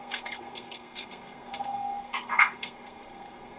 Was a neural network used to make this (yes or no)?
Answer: yes